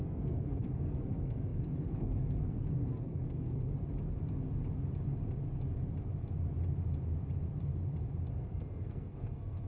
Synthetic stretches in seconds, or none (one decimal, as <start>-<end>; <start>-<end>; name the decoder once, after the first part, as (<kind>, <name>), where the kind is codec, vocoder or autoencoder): 0.0-3.7 (codec, SNAC); 8.3-9.7